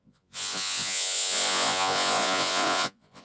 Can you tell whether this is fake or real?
fake